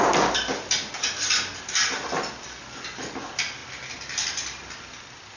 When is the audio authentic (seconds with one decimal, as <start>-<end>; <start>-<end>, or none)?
0.0-5.4